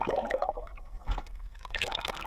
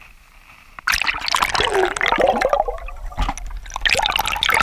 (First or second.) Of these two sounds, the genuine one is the second